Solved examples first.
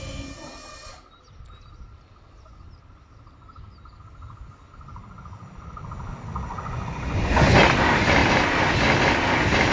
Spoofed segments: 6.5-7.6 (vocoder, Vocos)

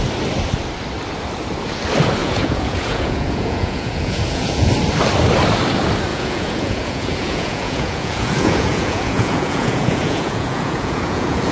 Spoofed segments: 2.2-4.7 (vocoder, Vocos); 6.1-11.5

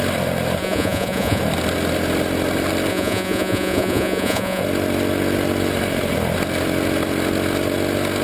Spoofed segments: 0.6-1.4 (vocoder, Vocos); 2.9-4.6

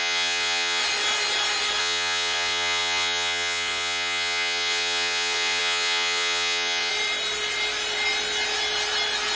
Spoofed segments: 0.0-0.8 (vocoder, Vocos); 1.8-6.9

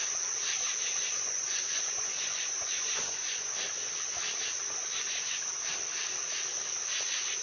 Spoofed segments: 1.0-3.5 (vocoder, Vocos); 4.8-5.4